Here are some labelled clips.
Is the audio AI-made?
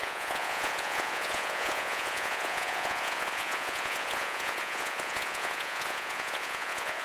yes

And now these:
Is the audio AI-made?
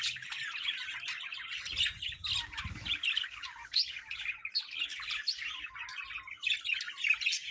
no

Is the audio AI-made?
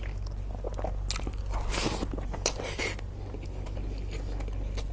no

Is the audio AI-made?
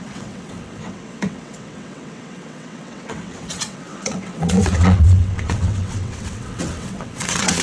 yes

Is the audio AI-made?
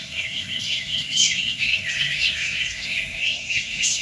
yes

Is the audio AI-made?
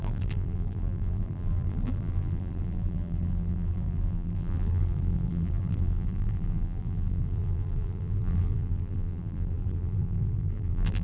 yes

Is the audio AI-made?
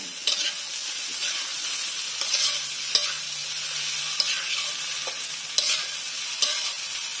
no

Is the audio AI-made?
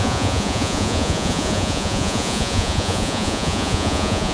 yes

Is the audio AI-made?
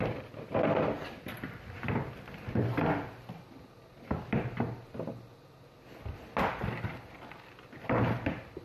no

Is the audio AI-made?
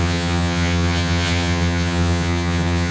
yes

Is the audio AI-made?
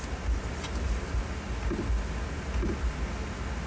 no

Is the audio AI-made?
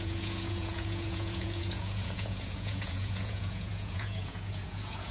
yes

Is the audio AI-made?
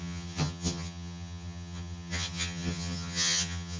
yes